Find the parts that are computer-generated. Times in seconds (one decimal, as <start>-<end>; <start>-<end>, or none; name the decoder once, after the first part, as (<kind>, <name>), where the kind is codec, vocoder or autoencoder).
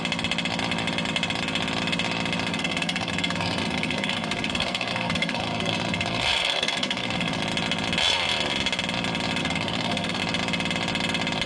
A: 2.5-7.4 (codec, SNAC); 9.4-10.2